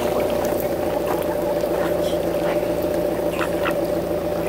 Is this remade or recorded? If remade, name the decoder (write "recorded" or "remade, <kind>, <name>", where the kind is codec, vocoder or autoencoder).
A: recorded